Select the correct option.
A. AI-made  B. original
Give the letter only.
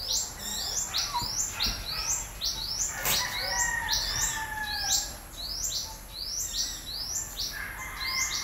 B